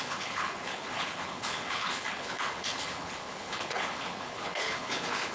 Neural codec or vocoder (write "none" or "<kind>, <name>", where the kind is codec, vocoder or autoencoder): codec, HILCodec